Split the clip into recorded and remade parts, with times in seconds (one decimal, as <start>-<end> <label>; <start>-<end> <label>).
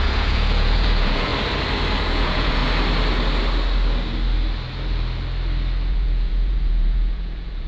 0.0-1.3 remade; 1.3-2.0 recorded; 2.0-2.6 remade; 2.6-5.9 recorded; 5.9-7.7 remade